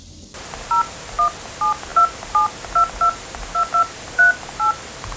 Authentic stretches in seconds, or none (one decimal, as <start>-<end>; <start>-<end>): 0.0-5.2